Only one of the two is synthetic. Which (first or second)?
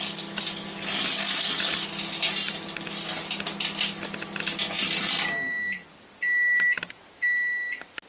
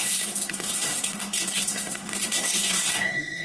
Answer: second